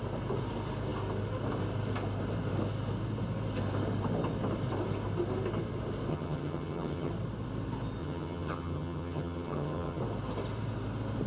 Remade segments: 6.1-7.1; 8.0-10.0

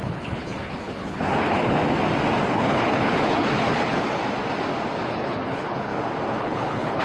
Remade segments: 0.0-1.8; 2.5-4.2; 5.1-5.9; 6.4-7.0

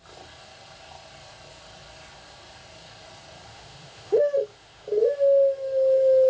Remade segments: 3.5-5.0